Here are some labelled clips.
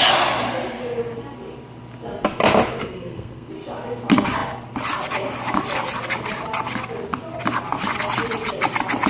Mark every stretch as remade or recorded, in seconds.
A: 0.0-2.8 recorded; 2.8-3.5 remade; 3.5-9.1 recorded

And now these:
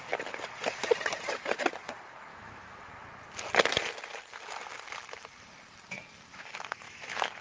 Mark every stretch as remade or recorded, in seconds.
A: 0.0-2.3 recorded; 2.3-2.9 remade; 2.9-6.3 recorded; 6.3-7.4 remade

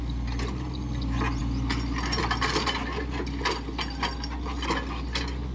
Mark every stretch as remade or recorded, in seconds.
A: 0.0-5.5 recorded

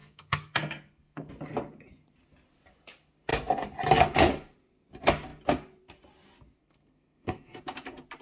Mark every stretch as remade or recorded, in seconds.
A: 0.0-1.3 remade; 1.3-6.6 recorded; 6.6-7.6 remade; 7.6-8.2 recorded

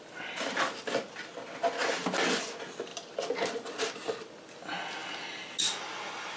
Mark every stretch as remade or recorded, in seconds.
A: 0.0-6.4 recorded

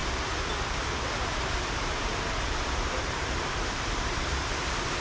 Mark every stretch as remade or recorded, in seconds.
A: 0.0-1.2 recorded; 1.2-5.0 remade

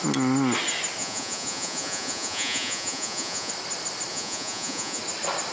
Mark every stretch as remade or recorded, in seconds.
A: 0.0-1.0 recorded; 1.0-3.5 remade; 3.5-4.1 recorded; 4.1-5.0 remade; 5.0-5.5 recorded